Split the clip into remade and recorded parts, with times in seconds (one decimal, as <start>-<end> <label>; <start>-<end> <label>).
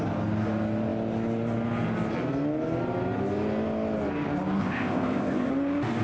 0.0-4.6 recorded; 4.6-5.5 remade; 5.5-6.0 recorded